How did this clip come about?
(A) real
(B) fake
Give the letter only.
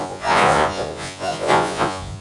B